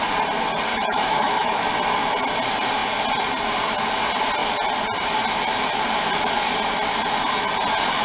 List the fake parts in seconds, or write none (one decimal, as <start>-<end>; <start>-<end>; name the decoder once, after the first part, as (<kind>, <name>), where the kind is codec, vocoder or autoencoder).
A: 0.7-1.7 (autoencoder, DAC-VAE)